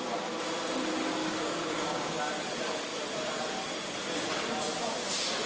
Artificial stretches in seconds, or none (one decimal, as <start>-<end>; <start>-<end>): 1.2-2.2